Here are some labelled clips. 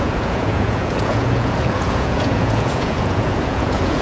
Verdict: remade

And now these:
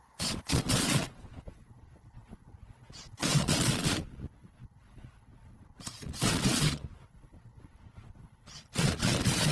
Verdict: remade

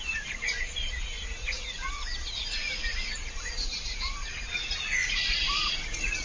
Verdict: remade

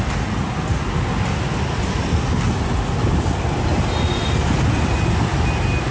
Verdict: recorded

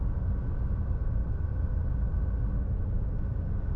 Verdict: recorded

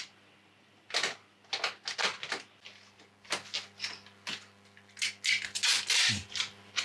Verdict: recorded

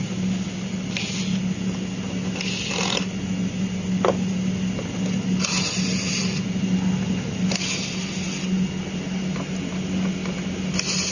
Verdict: recorded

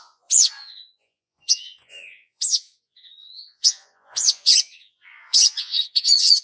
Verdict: remade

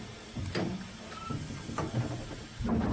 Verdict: recorded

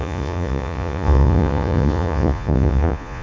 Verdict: remade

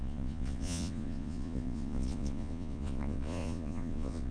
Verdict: remade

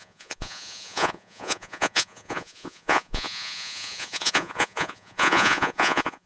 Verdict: remade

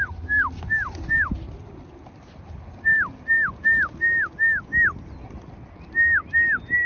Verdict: recorded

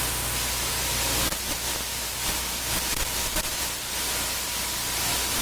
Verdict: recorded